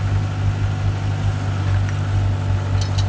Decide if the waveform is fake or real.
real